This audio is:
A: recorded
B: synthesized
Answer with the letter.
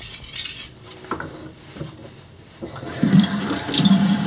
B